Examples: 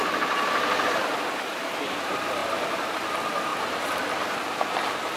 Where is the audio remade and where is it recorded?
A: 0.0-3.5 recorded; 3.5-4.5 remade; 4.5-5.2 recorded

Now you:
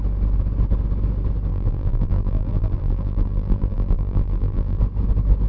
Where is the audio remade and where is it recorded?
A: 0.0-1.5 recorded; 1.5-4.8 remade; 4.8-5.5 recorded

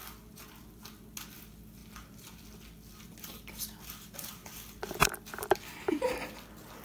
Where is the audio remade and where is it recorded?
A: 0.0-6.8 recorded